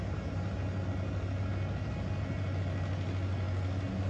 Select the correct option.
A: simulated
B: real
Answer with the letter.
B